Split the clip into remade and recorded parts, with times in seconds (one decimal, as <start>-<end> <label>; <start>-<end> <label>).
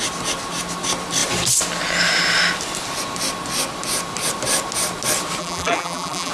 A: 0.0-5.4 recorded; 5.4-6.3 remade